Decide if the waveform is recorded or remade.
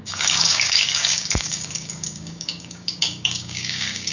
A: remade